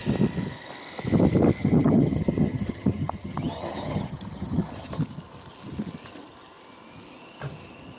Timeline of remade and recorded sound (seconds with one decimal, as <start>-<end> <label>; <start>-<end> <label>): 0.0-1.6 recorded; 1.6-5.0 remade; 5.0-8.0 recorded